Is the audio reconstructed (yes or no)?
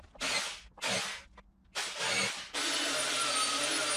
no